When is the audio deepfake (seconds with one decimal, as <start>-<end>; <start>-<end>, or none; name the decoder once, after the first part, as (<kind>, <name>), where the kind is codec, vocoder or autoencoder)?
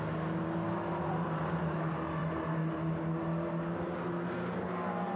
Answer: none